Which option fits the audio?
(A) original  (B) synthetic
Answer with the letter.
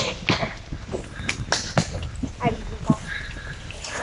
A